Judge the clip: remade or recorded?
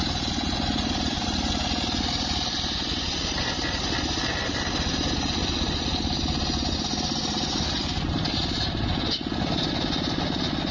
recorded